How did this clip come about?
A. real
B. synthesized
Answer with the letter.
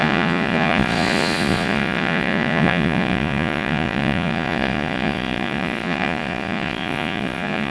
B